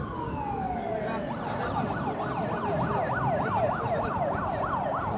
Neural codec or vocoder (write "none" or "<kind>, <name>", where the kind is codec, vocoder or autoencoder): none